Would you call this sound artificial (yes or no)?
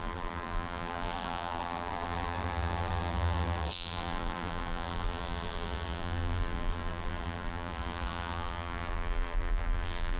yes